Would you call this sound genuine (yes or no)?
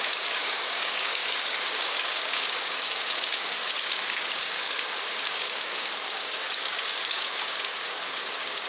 no